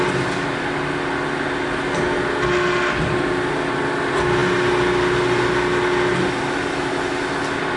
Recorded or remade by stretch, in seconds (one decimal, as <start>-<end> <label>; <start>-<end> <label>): 0.0-7.8 recorded